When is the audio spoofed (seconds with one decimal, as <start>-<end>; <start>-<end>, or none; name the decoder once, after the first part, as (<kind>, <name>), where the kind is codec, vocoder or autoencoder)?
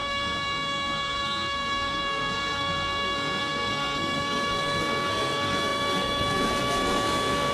0.0-7.5 (codec, SNAC)